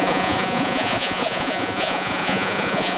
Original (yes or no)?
no